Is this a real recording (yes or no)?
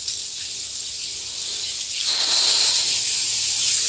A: yes